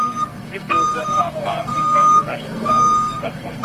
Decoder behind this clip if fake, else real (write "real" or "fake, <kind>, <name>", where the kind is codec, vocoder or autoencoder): fake, codec, SNAC